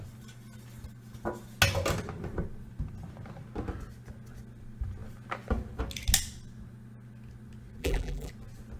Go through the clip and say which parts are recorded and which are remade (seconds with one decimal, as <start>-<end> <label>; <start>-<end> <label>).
0.0-7.8 recorded; 7.8-8.3 remade; 8.3-8.8 recorded